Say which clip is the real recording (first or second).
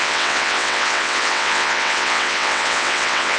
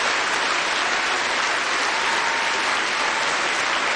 second